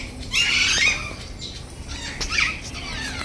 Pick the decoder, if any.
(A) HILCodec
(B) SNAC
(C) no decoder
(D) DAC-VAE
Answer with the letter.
C